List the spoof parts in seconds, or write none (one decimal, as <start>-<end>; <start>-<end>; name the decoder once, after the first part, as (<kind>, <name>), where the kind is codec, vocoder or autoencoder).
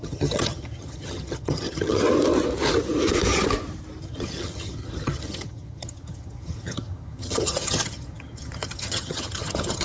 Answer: 0.0-2.0 (vocoder, HiFi-GAN); 4.0-9.8